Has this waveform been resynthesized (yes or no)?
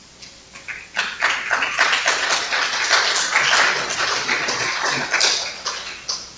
no